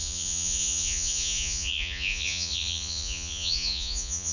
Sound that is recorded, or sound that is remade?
remade